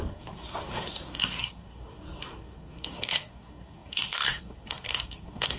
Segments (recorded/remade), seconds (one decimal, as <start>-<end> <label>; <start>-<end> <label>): 0.0-5.6 remade